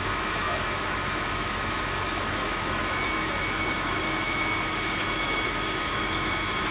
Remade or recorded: remade